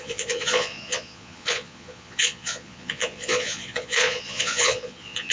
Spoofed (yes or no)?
yes